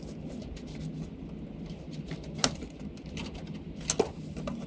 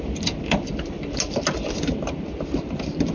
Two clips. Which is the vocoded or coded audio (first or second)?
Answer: second